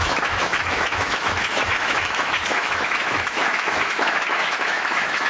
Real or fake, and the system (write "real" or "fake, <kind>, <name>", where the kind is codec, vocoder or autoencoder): fake, autoencoder, DAC-VAE